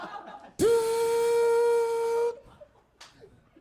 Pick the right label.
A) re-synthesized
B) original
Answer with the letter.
B